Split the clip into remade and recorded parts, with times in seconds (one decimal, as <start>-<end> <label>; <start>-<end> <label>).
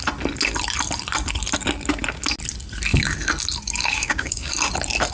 0.0-3.9 recorded; 3.9-4.5 remade; 4.5-5.1 recorded